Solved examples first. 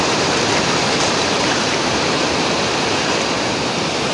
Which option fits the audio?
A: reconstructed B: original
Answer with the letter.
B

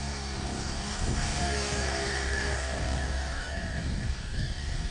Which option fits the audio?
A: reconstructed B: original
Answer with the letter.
A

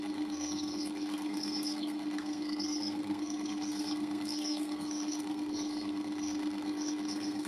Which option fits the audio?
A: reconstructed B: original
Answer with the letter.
A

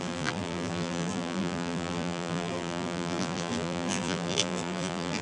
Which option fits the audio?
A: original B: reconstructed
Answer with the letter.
B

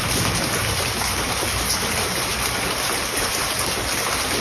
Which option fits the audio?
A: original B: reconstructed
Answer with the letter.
A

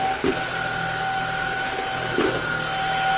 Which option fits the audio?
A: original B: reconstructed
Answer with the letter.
A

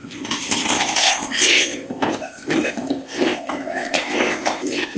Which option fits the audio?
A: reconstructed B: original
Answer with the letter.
A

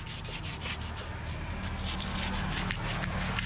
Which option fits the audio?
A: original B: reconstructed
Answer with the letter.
A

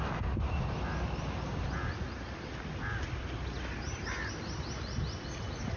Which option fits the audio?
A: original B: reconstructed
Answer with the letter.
A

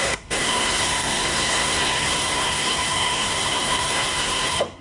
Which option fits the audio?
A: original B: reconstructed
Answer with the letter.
B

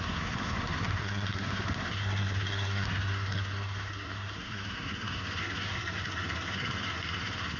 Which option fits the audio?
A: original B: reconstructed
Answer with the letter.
B